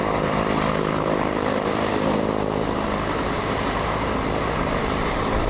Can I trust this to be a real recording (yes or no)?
no